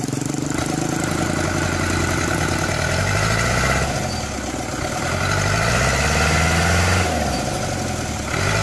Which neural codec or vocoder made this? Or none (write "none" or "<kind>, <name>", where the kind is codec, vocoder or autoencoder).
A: none